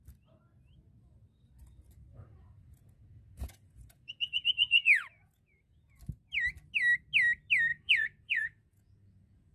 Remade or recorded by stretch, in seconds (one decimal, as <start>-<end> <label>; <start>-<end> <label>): 0.0-2.1 recorded; 2.1-6.0 remade; 6.0-7.7 recorded; 7.7-9.5 remade